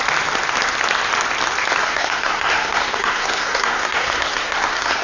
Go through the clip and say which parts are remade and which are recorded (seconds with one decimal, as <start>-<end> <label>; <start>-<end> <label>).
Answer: 0.0-1.8 recorded; 1.8-5.0 remade